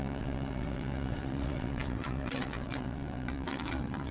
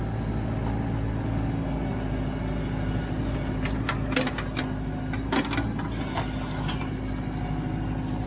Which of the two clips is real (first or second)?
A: second